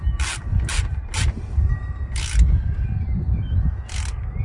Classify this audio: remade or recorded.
recorded